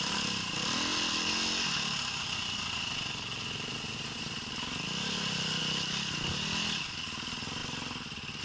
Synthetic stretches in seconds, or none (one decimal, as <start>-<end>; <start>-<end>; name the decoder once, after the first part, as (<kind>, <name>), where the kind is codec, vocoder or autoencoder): none